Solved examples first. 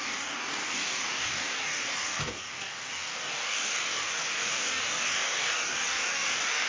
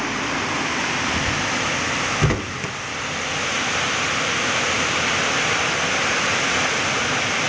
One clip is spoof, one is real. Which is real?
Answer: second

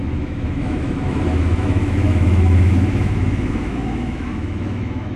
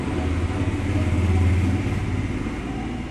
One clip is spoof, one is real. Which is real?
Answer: second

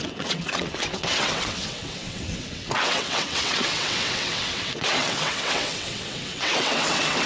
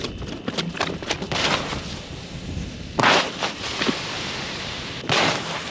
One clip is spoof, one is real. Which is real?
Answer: second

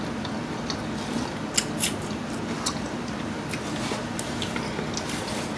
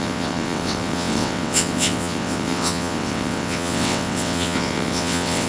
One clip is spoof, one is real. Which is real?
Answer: first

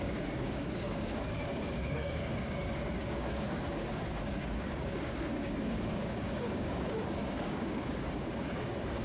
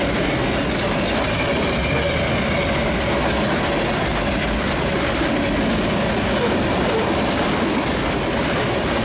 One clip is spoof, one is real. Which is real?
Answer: second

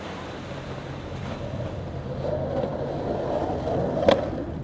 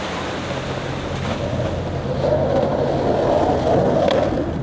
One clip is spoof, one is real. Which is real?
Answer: second